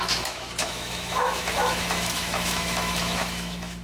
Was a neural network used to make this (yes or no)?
yes